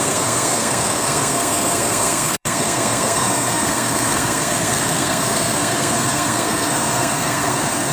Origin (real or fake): fake